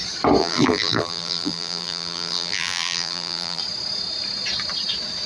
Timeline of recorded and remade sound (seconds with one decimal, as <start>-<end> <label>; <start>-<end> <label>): 0.0-0.4 recorded; 0.4-3.6 remade; 3.6-5.3 recorded